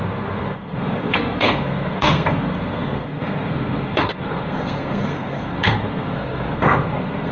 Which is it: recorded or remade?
remade